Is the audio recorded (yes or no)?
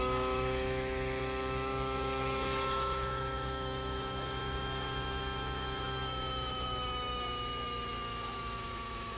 no